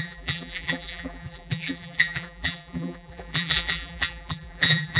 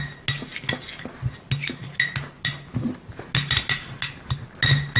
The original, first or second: second